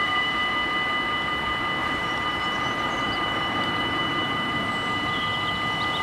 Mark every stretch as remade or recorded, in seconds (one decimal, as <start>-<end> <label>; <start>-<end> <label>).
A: 0.0-0.5 remade; 0.5-1.8 recorded; 1.8-5.2 remade; 5.2-6.0 recorded